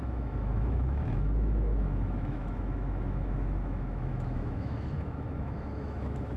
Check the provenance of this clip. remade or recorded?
remade